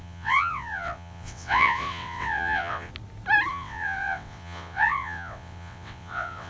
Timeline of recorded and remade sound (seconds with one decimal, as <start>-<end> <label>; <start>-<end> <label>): 0.0-2.9 remade; 2.9-3.5 recorded; 3.5-6.5 remade